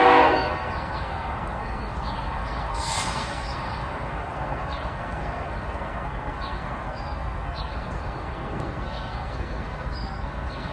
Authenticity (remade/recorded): remade